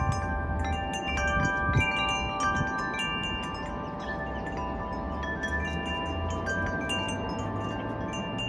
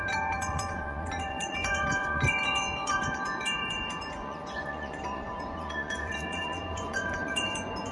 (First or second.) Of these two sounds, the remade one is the second